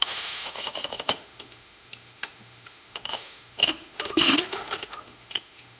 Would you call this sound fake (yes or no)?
yes